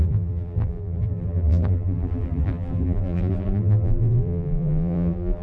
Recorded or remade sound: remade